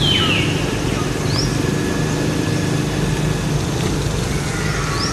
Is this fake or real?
real